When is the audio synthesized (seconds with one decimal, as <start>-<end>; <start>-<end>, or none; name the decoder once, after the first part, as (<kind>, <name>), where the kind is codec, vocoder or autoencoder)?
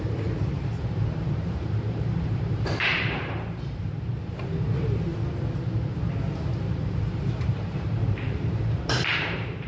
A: 0.0-5.1 (vocoder, BigVGAN v2); 6.5-9.7